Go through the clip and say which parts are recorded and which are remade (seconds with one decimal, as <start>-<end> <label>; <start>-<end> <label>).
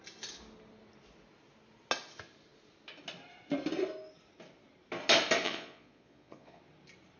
0.0-5.4 recorded; 5.4-6.6 remade; 6.6-7.2 recorded